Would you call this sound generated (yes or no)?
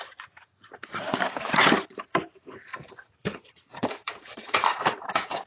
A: yes